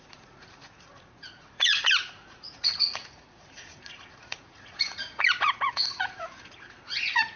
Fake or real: fake